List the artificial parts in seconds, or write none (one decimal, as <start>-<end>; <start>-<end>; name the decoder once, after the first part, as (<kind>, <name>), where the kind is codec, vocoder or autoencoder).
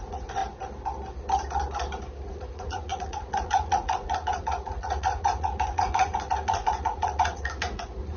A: 0.0-0.4 (vocoder, Vocos); 2.3-8.2